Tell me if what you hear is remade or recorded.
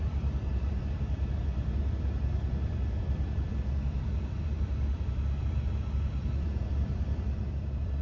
remade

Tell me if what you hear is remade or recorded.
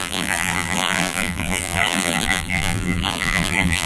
remade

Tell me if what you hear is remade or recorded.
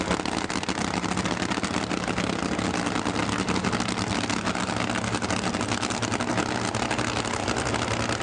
recorded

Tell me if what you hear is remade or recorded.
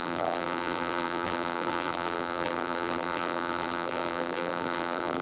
remade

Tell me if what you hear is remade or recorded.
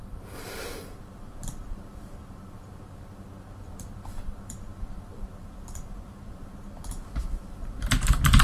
remade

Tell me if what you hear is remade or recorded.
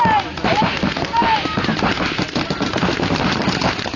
remade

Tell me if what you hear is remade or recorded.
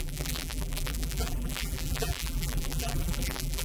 remade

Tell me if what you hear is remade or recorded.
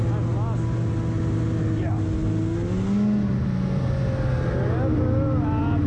recorded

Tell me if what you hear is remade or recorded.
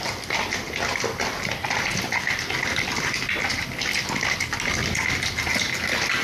recorded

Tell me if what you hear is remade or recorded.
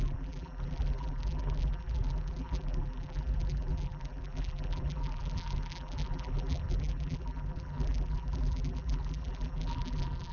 remade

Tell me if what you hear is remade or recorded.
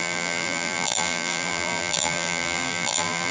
remade